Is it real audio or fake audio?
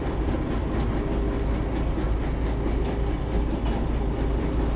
real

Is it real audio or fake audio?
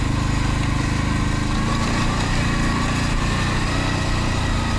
real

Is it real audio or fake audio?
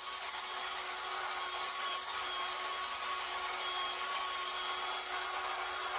real